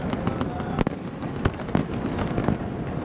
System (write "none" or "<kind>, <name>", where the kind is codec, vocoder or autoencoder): none